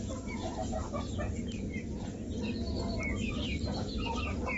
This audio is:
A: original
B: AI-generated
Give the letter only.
A